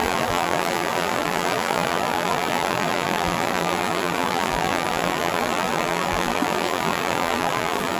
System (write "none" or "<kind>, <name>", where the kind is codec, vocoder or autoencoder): vocoder, BigVGAN v2